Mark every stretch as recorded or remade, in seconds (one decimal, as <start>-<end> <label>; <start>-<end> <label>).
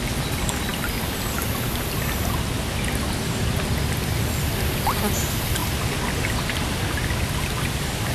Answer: 0.0-8.1 recorded